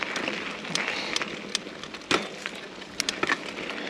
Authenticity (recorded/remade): recorded